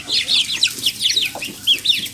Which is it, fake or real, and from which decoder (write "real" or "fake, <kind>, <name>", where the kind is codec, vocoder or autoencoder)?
real